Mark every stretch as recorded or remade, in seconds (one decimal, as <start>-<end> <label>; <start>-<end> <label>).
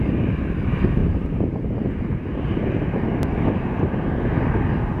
0.0-1.0 recorded; 1.0-1.9 remade; 1.9-5.0 recorded